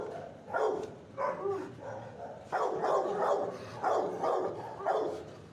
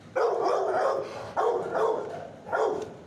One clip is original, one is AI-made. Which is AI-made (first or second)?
second